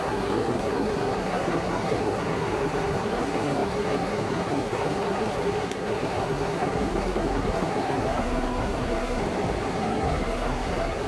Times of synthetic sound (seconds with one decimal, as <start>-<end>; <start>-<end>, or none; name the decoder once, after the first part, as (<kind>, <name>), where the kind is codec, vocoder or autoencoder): 0.0-9.2 (codec, SNAC); 9.7-11.1